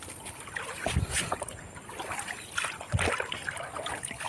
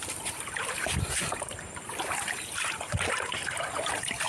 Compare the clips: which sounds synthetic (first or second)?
second